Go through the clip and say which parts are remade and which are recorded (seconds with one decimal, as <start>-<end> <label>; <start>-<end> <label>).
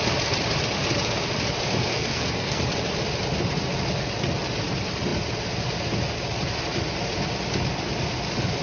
0.0-1.9 recorded; 1.9-2.6 remade; 2.6-8.6 recorded